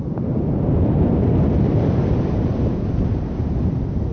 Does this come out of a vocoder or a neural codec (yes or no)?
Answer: no